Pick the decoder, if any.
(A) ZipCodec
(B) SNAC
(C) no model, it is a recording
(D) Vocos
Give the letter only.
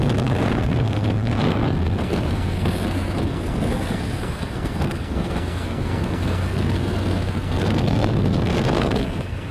B